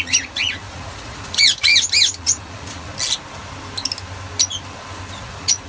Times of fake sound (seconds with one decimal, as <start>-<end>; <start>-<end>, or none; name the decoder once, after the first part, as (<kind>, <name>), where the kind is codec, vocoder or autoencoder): 0.0-1.7 (vocoder, Vocos); 2.2-2.9; 5.2-5.7